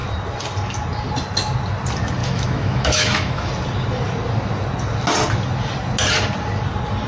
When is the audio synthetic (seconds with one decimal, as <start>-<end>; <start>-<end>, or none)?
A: 2.2-3.5